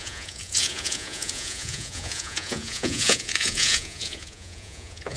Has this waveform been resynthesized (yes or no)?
yes